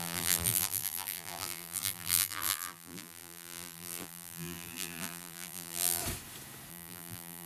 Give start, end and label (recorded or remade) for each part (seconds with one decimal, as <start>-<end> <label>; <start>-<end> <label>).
0.0-6.0 remade; 6.0-6.7 recorded; 6.7-7.5 remade